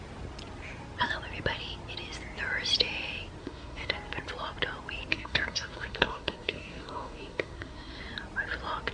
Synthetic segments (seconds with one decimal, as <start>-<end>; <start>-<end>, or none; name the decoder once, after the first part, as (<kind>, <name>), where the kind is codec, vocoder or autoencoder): 3.4-3.9 (codec, SNAC); 5.1-8.0